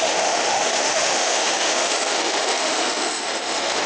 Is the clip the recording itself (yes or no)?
no